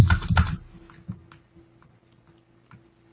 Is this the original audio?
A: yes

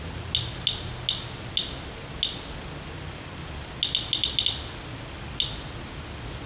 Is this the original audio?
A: yes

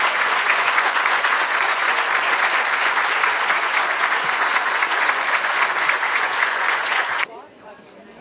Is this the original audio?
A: no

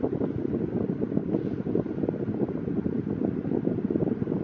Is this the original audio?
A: yes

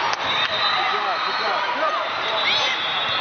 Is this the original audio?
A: yes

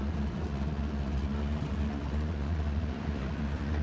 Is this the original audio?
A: no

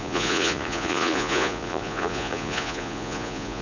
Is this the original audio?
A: no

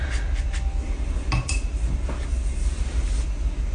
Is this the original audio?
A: yes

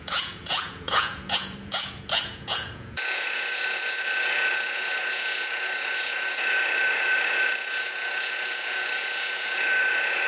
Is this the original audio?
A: no